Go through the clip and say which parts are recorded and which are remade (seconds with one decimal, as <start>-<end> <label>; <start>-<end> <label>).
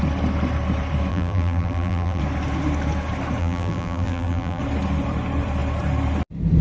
0.0-1.1 recorded; 1.1-2.2 remade; 2.2-3.4 recorded; 3.4-4.6 remade; 4.6-6.6 recorded